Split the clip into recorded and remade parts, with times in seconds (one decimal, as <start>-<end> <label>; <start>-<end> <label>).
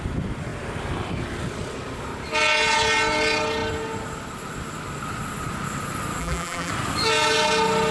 0.0-6.2 recorded; 6.2-6.7 remade; 6.7-7.9 recorded